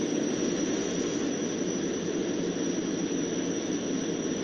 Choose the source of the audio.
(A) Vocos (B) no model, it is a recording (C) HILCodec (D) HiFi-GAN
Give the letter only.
B